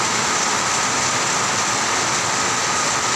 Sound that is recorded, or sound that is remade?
recorded